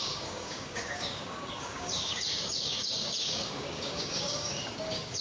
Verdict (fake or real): fake